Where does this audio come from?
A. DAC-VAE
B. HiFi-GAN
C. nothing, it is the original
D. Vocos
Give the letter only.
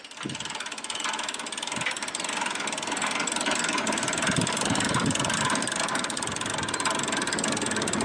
C